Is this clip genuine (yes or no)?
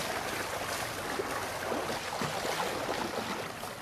yes